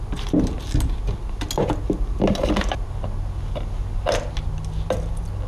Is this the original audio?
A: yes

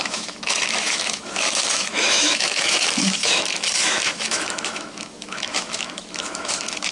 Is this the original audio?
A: no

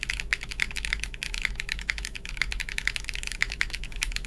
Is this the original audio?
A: no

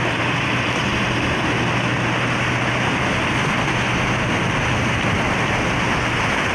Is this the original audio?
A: yes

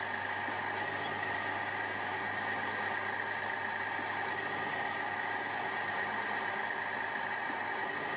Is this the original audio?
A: yes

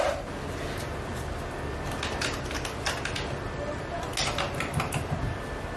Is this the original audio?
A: yes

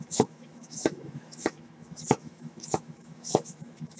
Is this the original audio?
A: no